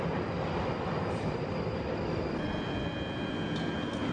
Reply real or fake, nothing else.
real